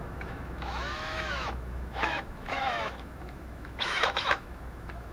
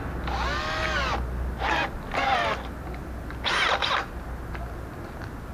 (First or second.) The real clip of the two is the second